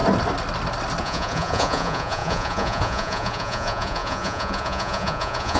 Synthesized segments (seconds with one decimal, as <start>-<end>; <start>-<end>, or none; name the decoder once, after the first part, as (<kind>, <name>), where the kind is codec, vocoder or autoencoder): 1.0-5.6 (vocoder, Vocos)